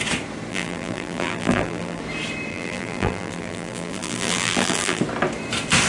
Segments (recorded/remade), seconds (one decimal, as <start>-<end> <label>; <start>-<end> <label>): 0.0-0.5 recorded; 0.5-2.0 remade; 2.0-2.5 recorded; 2.5-5.0 remade; 5.0-5.9 recorded